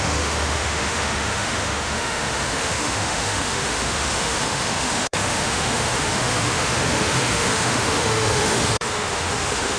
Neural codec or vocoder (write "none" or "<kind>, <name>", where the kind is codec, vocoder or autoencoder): autoencoder, DAC-VAE